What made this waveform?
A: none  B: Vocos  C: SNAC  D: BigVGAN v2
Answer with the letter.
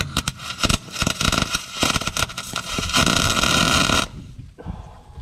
D